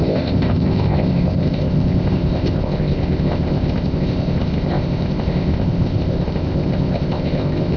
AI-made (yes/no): yes